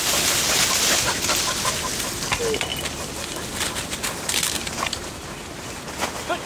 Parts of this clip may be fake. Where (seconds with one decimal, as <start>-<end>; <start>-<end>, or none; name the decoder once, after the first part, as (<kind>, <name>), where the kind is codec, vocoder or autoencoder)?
none

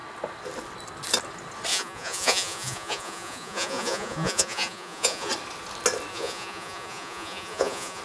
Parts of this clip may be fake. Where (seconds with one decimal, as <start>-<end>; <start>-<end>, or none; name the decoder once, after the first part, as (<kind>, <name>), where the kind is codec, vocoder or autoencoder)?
1.7-5.3 (vocoder, Vocos); 6.1-8.0

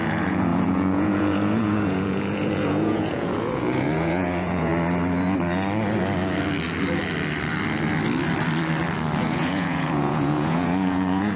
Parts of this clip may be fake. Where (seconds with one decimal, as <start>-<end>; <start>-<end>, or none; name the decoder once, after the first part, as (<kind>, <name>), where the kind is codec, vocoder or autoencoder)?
0.0-4.7 (vocoder, Vocos); 9.2-11.4

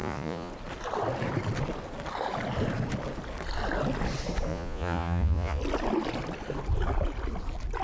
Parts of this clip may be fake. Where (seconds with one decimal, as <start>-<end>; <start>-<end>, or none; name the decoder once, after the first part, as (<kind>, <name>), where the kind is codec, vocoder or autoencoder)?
0.0-0.5 (vocoder, Vocos); 4.5-5.6

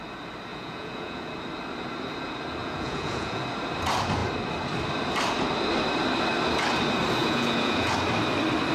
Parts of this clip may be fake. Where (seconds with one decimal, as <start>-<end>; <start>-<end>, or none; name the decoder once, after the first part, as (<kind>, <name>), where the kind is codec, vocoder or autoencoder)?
0.5-1.3 (vocoder, Vocos); 2.6-3.4; 7.2-7.9

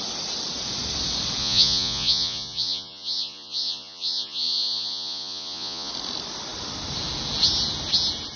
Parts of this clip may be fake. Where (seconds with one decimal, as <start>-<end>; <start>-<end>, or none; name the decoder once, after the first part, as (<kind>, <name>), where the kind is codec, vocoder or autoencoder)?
1.4-5.9 (vocoder, Vocos)